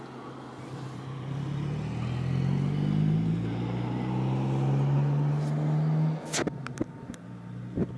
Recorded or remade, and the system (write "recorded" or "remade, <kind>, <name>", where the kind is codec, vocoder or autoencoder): recorded